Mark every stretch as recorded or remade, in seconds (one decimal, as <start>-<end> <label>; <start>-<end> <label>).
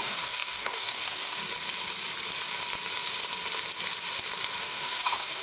0.0-1.4 remade; 1.4-4.6 recorded; 4.6-5.4 remade